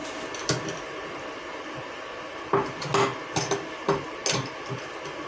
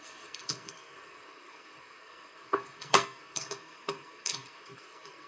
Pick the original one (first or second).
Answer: first